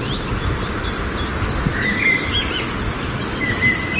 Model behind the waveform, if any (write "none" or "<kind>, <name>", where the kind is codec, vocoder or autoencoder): none